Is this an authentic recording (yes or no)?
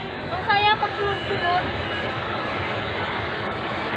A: no